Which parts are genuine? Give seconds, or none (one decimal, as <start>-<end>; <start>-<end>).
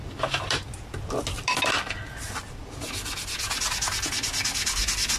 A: 0.0-5.2